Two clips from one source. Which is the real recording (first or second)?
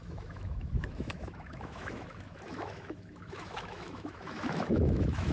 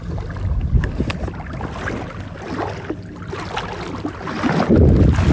second